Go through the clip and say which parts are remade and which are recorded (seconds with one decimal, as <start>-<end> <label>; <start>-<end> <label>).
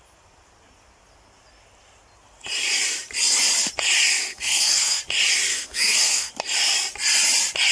0.0-4.3 recorded; 4.3-5.0 remade; 5.0-5.5 recorded; 5.5-6.3 remade; 6.3-7.7 recorded